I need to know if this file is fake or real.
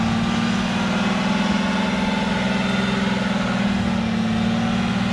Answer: real